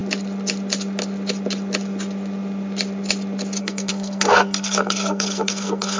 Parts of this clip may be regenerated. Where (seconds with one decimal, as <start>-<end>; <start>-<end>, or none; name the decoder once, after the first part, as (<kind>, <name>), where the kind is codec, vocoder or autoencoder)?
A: 3.6-6.0 (codec, SNAC)